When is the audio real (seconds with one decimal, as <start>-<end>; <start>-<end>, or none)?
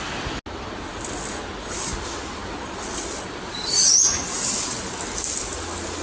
0.0-6.0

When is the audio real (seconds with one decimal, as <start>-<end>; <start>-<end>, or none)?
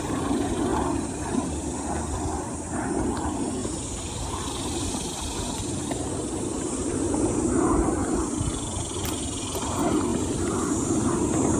0.0-11.6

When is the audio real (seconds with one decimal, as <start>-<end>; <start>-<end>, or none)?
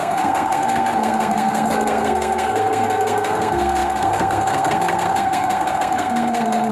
none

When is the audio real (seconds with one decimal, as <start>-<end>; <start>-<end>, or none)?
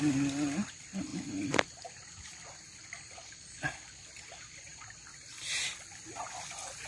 0.0-6.9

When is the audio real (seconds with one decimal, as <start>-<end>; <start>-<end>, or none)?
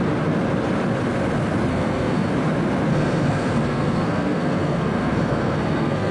0.0-1.7; 2.3-2.9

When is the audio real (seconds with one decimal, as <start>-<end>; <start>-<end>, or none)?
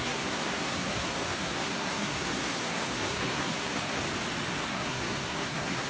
4.0-4.6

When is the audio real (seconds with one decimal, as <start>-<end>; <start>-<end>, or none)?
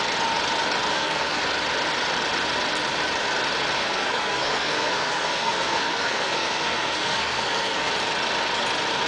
0.0-0.9; 1.4-3.8; 7.9-9.1